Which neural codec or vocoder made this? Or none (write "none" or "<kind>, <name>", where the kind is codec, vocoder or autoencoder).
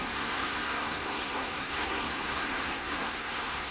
codec, SNAC